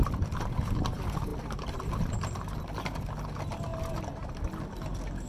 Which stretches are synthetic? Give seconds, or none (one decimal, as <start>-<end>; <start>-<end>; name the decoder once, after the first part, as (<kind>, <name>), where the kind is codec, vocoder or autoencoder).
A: none